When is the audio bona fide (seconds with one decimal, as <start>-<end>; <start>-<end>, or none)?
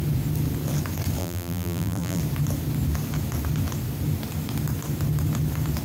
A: 0.0-1.2; 2.2-5.8